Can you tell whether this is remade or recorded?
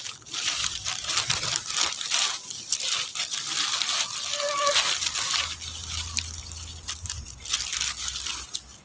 recorded